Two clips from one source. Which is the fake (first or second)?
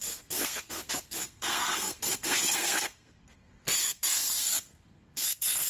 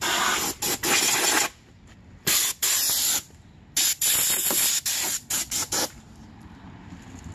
first